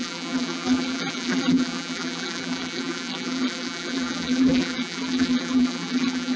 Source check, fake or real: fake